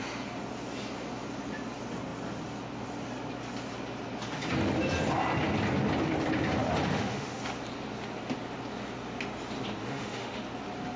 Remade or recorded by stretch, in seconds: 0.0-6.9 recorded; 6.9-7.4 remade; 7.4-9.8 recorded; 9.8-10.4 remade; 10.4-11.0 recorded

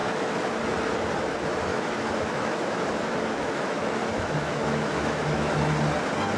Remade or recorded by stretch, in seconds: 0.0-0.6 remade; 0.6-1.7 recorded; 1.7-5.5 remade; 5.5-6.4 recorded